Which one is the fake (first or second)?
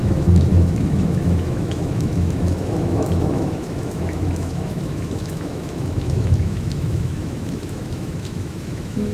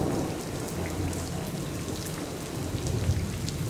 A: first